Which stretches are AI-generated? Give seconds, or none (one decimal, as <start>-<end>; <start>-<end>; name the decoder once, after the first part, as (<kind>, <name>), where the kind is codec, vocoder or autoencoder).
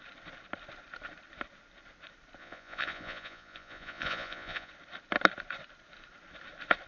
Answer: 2.4-4.7 (vocoder, Vocos)